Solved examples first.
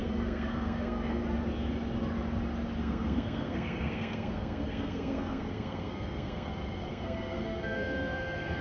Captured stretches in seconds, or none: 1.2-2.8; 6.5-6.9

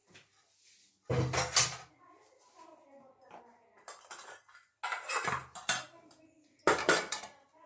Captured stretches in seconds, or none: 0.0-7.7

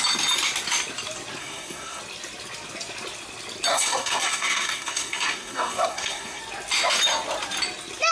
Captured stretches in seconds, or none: 0.0-1.4; 2.0-3.7; 6.4-8.1

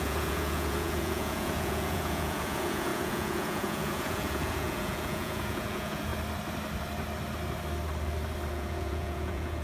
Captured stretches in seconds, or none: 6.1-8.5

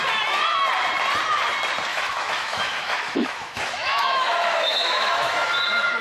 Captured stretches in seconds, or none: 0.0-1.9; 5.5-6.0

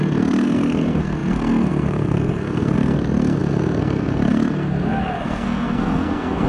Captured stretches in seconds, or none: none

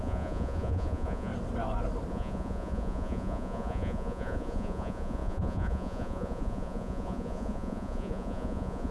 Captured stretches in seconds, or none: 1.3-2.1